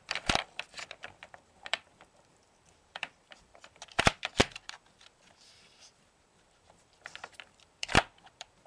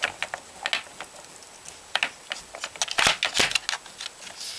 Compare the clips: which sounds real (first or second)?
second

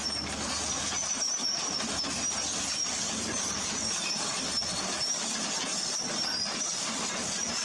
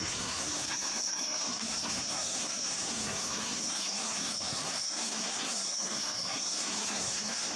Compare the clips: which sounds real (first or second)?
first